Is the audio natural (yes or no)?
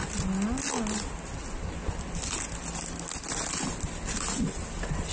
yes